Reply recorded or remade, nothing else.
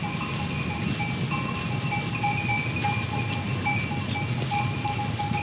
recorded